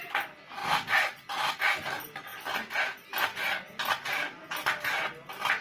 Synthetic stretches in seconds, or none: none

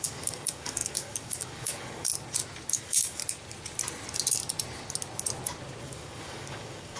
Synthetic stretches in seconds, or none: 0.0-2.1 (codec, DAC); 2.7-3.2; 5.8-7.0

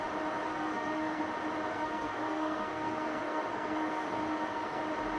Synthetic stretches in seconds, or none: 0.5-1.2 (codec, SNAC); 1.7-4.8

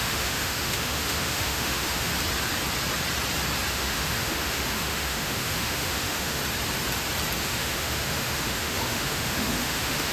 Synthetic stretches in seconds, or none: 0.0-2.1 (autoencoder, DAC-VAE); 3.7-6.4; 7.4-10.1

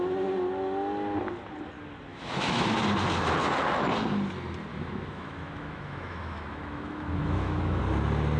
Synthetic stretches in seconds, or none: 2.1-2.8 (autoencoder, DAC-VAE); 4.7-7.8